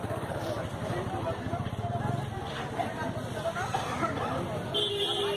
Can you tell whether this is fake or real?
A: real